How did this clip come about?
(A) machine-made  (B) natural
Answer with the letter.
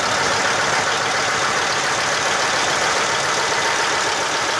B